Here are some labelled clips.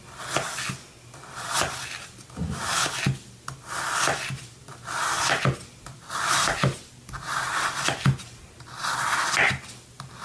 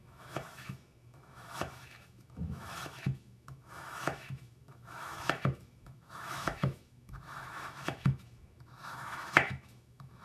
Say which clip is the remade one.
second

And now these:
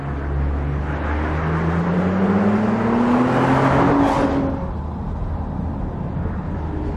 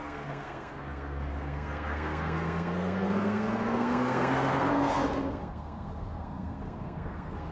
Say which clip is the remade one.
second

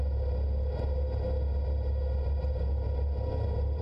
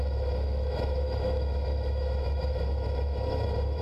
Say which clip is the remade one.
second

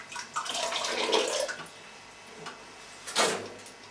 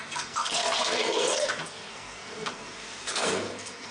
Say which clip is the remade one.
second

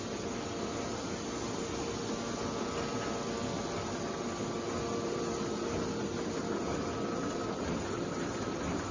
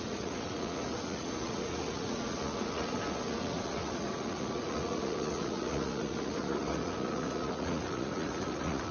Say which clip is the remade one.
second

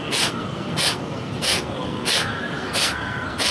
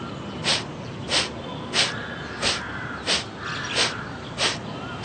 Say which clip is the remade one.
first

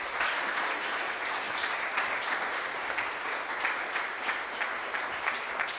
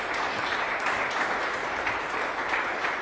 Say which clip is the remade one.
second